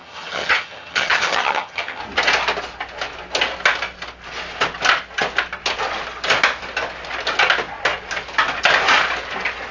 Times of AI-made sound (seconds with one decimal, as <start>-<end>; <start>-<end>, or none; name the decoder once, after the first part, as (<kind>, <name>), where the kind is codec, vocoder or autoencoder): 0.0-2.0 (vocoder, HiFi-GAN)